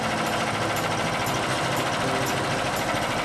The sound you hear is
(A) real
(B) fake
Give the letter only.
A